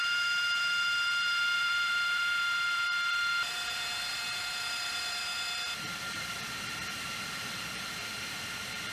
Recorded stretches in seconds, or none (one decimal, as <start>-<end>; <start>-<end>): 5.2-6.0